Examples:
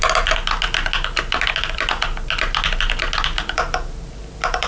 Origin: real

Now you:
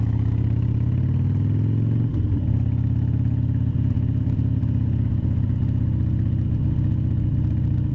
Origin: real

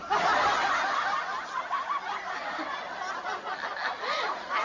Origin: real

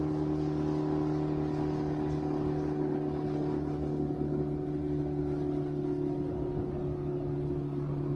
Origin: real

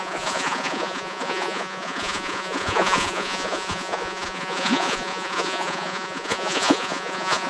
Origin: fake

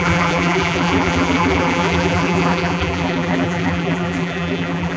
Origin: fake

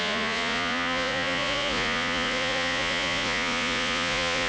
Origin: fake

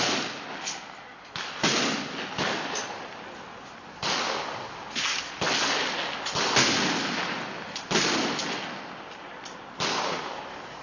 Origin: real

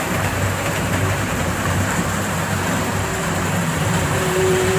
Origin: fake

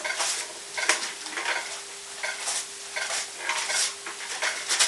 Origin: real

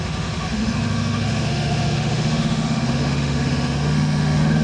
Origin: fake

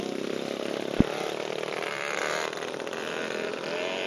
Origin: real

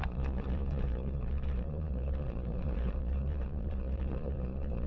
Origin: fake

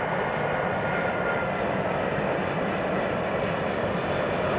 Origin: fake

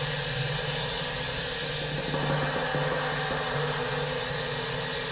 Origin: real